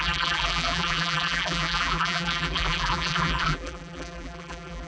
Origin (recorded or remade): remade